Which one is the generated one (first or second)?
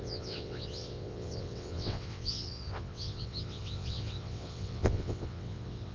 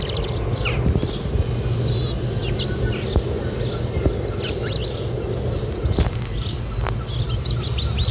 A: first